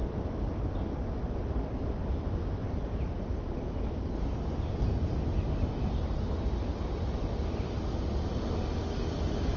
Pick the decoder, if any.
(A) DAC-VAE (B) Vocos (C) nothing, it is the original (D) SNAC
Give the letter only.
C